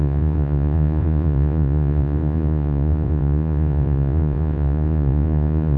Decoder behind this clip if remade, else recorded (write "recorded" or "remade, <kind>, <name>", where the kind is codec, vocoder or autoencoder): remade, vocoder, Vocos